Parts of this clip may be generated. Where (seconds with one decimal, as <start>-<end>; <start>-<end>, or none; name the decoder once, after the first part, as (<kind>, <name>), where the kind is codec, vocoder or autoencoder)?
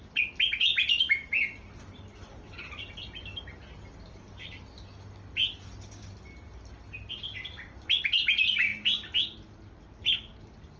none